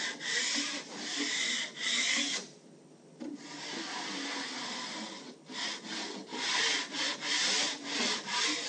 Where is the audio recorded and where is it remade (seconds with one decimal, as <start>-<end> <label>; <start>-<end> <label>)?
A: 0.0-8.7 recorded